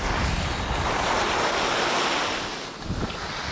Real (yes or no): yes